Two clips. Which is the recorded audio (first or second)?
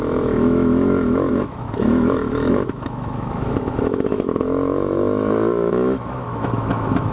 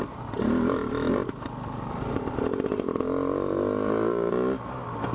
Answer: second